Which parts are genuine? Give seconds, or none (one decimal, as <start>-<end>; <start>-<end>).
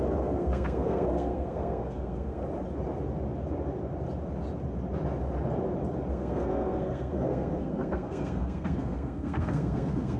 2.4-6.1